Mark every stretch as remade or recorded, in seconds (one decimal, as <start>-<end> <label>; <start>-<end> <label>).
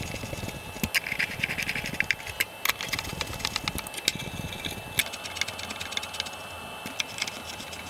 0.0-7.9 recorded